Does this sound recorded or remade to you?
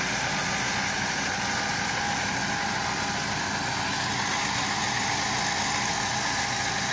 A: recorded